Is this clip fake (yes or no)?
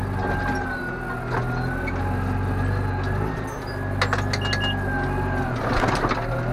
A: no